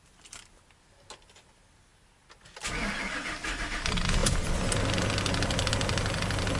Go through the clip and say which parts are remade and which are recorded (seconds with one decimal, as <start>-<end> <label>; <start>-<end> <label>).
0.0-6.6 recorded